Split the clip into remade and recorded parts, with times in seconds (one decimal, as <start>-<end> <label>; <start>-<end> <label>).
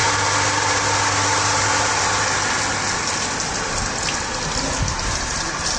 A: 0.0-5.8 recorded